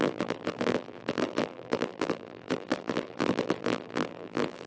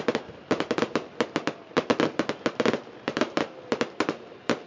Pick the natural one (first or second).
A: second